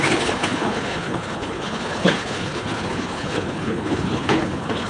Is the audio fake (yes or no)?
yes